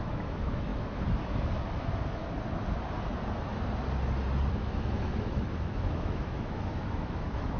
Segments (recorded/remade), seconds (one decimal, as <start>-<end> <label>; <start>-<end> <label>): 0.0-2.2 remade; 2.2-4.5 recorded; 4.5-7.6 remade